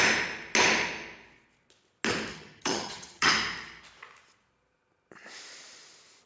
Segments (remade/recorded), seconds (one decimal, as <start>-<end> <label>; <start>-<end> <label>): 0.0-2.3 recorded; 2.3-3.3 remade; 3.3-6.3 recorded